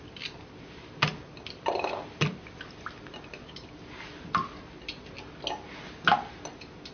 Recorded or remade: recorded